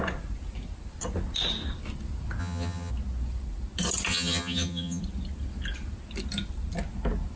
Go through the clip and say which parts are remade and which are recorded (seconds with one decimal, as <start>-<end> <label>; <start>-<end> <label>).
0.0-2.4 recorded; 2.4-2.9 remade; 2.9-4.1 recorded; 4.1-5.0 remade; 5.0-7.4 recorded